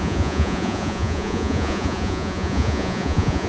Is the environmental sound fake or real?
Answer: fake